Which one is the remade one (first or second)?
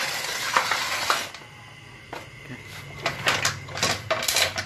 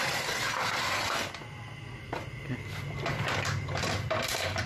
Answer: second